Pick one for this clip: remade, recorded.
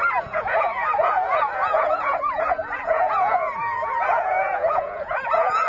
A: remade